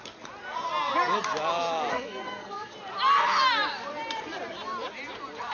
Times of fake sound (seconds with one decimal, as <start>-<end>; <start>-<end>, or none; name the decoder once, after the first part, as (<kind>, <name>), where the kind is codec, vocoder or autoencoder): 1.9-2.7 (codec, SNAC)